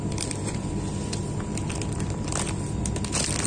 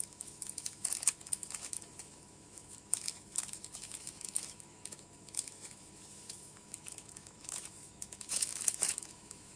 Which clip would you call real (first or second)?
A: first